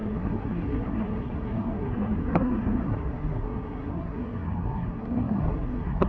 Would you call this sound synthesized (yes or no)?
yes